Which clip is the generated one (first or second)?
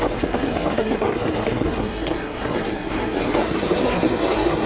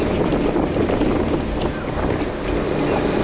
first